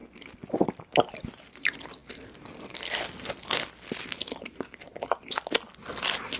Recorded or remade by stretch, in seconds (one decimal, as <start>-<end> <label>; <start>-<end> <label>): 0.0-6.4 recorded